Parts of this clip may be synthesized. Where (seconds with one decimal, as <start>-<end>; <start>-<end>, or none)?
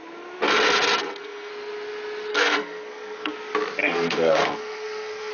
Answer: 1.0-1.5; 2.3-3.3; 3.8-5.3